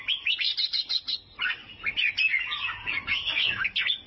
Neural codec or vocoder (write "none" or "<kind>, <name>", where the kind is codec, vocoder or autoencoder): none